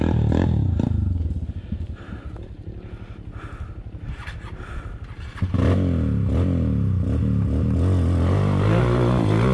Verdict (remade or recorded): recorded